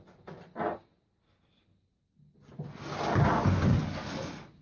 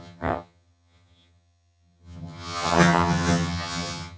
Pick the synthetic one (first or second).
second